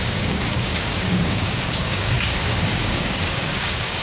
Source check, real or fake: fake